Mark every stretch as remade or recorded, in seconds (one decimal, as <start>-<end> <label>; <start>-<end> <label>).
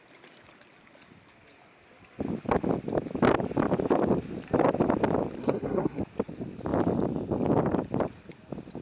0.0-5.4 recorded; 5.4-6.0 remade; 6.0-8.8 recorded